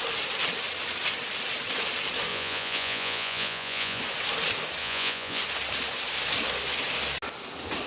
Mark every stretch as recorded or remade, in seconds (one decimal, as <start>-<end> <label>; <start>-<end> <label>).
0.0-2.3 recorded; 2.3-4.0 remade; 4.0-4.8 recorded; 4.8-5.4 remade; 5.4-7.9 recorded